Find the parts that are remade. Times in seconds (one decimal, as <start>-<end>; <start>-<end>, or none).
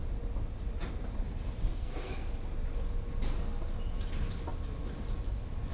1.7-2.3